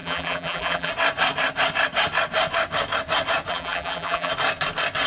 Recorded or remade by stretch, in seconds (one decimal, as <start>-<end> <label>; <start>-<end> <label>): 0.0-0.9 remade; 0.9-3.5 recorded; 3.5-4.3 remade; 4.3-5.1 recorded